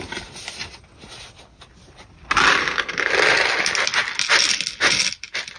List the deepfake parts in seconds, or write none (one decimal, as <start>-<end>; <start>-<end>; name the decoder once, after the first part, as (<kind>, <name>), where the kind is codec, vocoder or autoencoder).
2.6-3.1 (codec, SNAC)